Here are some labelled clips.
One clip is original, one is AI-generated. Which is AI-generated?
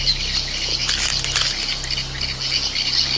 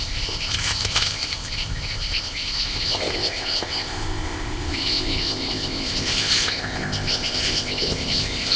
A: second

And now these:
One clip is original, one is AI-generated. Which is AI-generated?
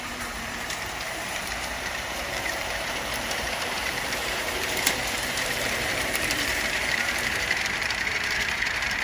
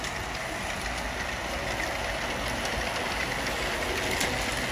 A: first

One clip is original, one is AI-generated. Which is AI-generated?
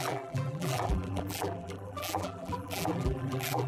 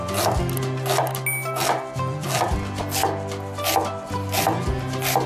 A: first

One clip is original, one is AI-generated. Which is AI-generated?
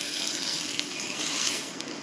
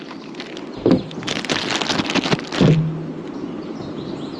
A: first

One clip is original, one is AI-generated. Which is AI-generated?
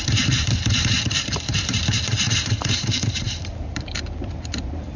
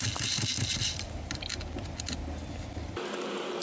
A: first